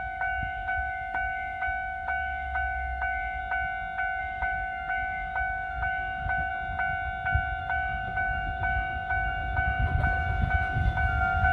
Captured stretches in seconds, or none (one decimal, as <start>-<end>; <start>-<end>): 3.4-4.2; 6.5-7.6